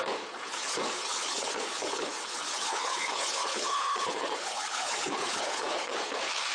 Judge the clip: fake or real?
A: fake